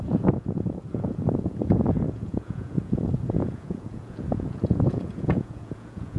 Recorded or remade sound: remade